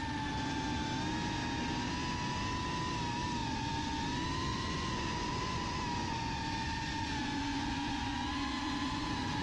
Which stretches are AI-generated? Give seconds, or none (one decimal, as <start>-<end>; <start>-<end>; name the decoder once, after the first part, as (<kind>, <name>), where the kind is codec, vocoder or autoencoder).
3.4-4.0 (vocoder, Vocos); 4.5-9.4